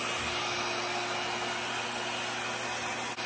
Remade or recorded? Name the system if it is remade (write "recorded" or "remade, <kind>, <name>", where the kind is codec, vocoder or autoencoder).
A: recorded